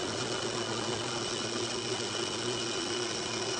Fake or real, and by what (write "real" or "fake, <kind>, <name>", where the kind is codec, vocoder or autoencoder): fake, vocoder, Vocos